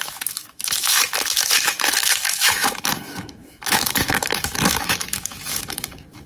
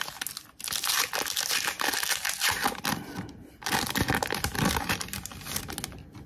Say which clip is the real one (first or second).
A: second